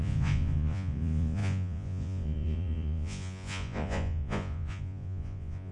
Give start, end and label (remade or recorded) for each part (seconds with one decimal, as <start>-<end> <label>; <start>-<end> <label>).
0.0-5.7 remade